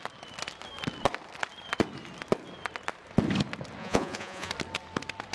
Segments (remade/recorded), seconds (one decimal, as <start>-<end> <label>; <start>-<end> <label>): 0.0-3.8 recorded; 3.8-4.5 remade; 4.5-5.3 recorded